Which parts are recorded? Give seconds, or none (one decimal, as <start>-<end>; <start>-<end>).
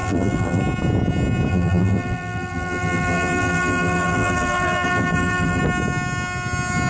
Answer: 0.6-1.5; 5.6-6.9